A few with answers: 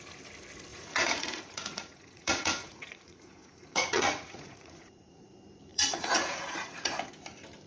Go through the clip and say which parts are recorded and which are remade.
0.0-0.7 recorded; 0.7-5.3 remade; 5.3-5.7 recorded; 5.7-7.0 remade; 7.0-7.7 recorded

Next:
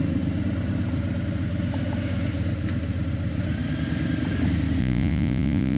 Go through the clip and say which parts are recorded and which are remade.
0.0-4.8 recorded; 4.8-5.8 remade

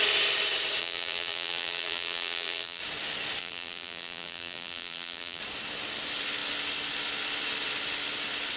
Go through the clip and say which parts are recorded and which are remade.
0.0-0.8 recorded; 0.8-2.8 remade; 2.8-3.4 recorded; 3.4-5.4 remade; 5.4-8.6 recorded

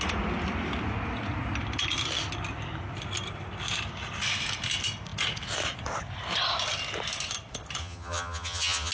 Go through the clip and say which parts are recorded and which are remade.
0.0-7.8 recorded; 7.8-8.9 remade

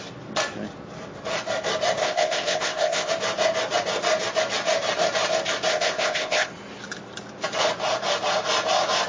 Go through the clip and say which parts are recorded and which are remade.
0.0-2.0 recorded; 2.0-3.1 remade; 3.1-5.7 recorded; 5.7-6.5 remade; 6.5-9.1 recorded

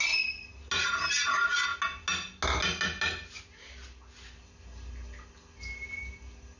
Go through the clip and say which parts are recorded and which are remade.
0.0-6.6 recorded

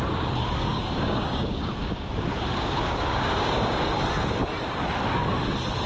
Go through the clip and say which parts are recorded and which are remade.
0.0-0.4 recorded; 0.4-3.9 remade; 3.9-5.9 recorded

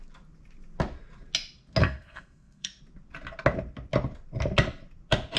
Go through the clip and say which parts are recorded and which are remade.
0.0-1.8 recorded; 1.8-2.8 remade; 2.8-5.4 recorded